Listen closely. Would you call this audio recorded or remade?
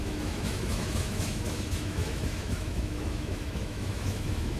remade